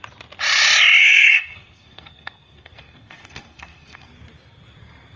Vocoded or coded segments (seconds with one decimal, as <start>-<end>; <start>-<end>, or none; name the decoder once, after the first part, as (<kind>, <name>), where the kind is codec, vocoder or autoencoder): 1.0-4.1 (codec, SNAC)